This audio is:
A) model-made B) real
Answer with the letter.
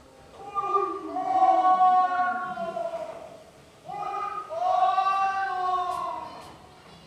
B